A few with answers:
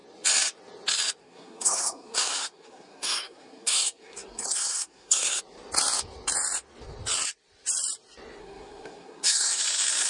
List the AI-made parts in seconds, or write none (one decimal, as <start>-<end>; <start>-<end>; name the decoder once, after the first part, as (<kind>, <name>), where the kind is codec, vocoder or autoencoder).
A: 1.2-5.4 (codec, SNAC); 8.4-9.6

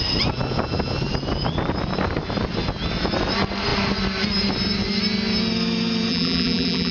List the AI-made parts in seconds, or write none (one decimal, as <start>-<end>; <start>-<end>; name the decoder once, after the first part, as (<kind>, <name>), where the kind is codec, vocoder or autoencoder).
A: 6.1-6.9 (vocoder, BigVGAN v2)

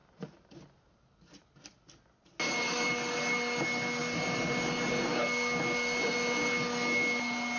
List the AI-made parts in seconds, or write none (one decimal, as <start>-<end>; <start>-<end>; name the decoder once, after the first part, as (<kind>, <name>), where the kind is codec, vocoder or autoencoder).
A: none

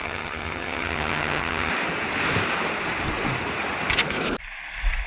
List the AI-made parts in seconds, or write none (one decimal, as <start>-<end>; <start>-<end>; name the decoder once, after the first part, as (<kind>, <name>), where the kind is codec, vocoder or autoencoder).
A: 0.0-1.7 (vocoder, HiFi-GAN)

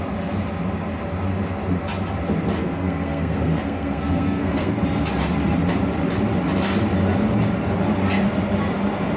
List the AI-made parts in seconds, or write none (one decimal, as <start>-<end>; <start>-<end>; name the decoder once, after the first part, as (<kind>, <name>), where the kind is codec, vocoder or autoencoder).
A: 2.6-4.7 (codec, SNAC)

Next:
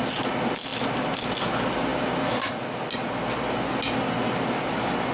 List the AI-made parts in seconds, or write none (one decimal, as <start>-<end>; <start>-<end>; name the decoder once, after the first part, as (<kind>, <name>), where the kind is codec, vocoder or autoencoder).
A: none

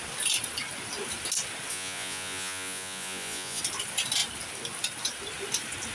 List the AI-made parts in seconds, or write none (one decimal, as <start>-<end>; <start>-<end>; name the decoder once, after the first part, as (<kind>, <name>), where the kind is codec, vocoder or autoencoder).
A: 1.7-3.6 (vocoder, Vocos)